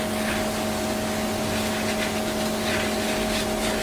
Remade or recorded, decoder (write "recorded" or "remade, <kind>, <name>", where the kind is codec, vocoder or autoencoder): recorded